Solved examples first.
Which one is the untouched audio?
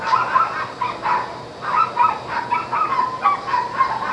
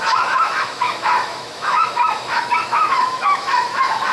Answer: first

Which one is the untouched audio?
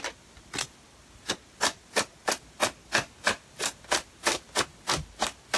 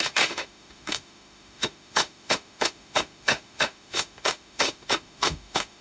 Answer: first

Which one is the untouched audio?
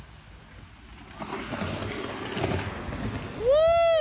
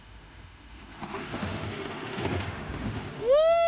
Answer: first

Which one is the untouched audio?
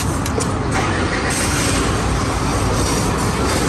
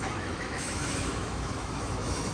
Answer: first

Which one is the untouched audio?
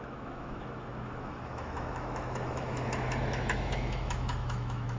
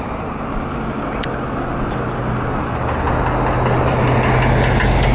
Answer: second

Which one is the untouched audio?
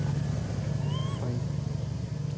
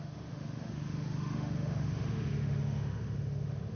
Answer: first